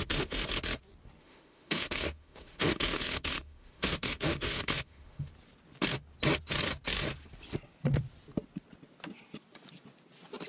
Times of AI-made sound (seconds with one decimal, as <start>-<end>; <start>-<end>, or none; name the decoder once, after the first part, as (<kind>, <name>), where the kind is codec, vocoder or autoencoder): 0.0-0.4 (autoencoder, DAC-VAE); 1.2-5.3